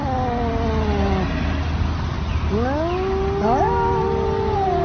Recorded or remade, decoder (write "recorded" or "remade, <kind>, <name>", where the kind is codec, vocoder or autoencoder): recorded